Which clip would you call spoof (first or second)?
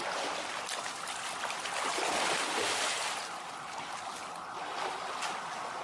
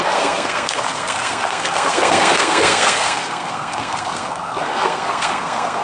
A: second